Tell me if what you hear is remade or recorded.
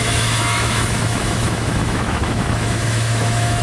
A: remade